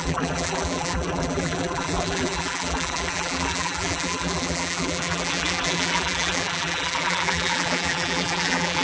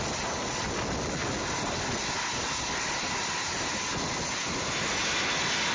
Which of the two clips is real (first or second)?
second